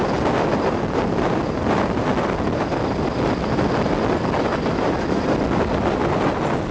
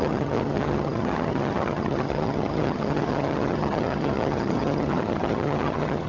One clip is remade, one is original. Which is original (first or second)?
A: first